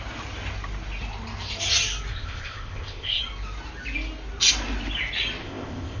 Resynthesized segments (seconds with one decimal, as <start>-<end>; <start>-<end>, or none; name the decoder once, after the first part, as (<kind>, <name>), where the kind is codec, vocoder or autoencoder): 2.1-3.2 (codec, ZipCodec); 5.4-6.0